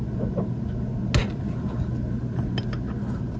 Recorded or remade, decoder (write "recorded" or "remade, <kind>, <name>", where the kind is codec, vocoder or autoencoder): recorded